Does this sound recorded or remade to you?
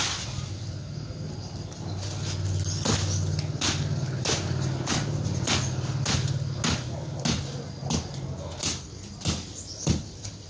recorded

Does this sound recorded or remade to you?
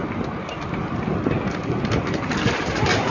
recorded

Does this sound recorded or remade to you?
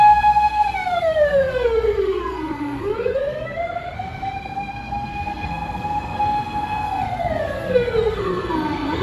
remade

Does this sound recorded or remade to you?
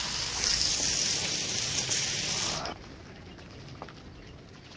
recorded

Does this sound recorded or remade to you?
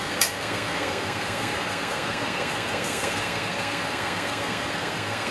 remade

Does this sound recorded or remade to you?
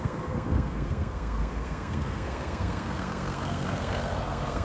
remade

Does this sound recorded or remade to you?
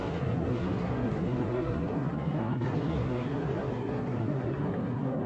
remade